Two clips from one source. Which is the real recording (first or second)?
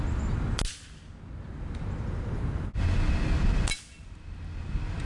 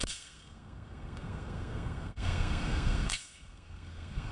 first